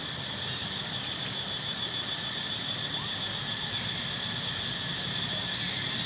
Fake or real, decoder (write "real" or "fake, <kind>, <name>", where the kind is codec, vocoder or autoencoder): real